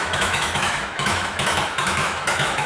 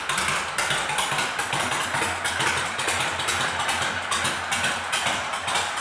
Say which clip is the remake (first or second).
first